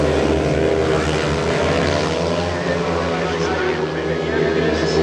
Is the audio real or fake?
real